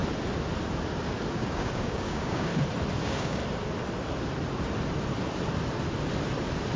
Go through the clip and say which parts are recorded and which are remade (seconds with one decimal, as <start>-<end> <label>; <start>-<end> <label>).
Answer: 0.0-1.3 recorded; 1.3-2.5 remade; 2.5-3.0 recorded; 3.0-3.4 remade; 3.4-6.8 recorded